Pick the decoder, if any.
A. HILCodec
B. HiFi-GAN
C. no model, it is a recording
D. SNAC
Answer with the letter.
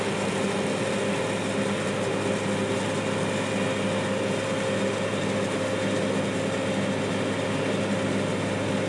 C